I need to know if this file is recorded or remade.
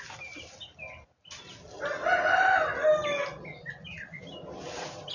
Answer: recorded